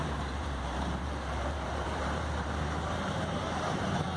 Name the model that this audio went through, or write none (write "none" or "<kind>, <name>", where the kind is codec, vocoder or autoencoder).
vocoder, BigVGAN v2